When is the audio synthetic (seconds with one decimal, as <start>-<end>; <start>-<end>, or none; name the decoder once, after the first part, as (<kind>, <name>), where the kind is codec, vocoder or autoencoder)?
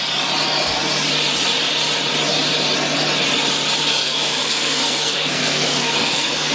3.8-6.5 (codec, SNAC)